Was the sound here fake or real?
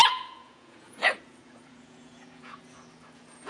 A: fake